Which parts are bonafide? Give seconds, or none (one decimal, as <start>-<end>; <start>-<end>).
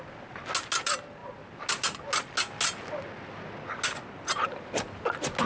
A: 0.0-5.5